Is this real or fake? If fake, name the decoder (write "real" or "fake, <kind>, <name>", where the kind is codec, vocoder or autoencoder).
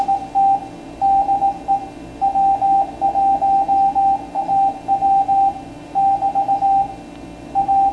real